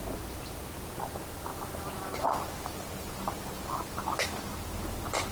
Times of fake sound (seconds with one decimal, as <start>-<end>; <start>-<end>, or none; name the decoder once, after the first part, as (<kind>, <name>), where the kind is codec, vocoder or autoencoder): 0.0-1.0 (vocoder, BigVGAN v2); 1.5-3.5